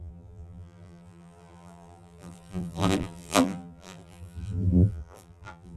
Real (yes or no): no